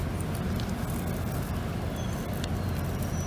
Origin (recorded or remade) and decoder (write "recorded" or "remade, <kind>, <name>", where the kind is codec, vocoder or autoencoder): recorded